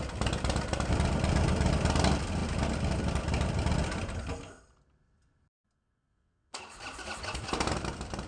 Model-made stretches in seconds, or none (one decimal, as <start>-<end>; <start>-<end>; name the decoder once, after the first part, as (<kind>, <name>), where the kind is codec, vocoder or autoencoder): 6.1-6.6 (vocoder, WaveNeXt)